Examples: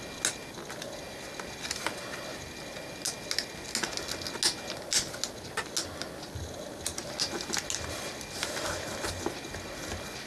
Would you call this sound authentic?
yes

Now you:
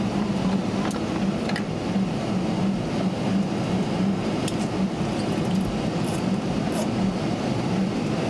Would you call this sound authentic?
yes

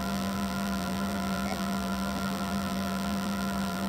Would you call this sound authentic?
no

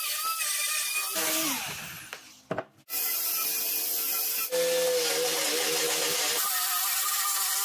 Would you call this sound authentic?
yes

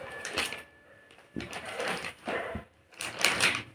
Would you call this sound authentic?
no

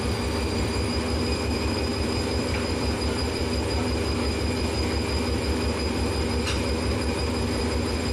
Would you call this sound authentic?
no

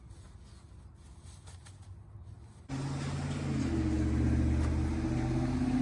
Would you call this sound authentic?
yes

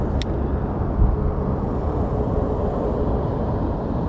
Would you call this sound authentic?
yes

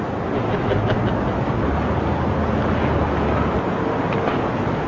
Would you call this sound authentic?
yes